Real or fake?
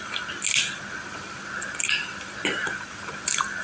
real